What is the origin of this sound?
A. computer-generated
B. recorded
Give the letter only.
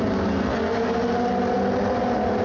B